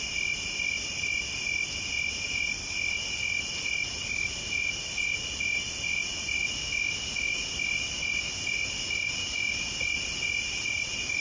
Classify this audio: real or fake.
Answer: real